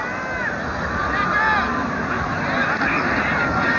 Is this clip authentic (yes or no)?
yes